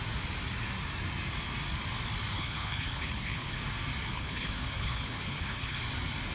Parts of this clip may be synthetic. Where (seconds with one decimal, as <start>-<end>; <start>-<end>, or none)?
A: 2.3-3.6; 4.1-5.8